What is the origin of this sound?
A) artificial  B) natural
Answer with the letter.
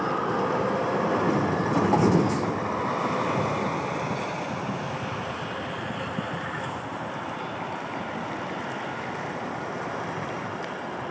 B